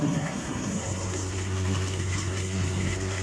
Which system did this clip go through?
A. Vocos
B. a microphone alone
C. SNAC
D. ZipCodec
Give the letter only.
C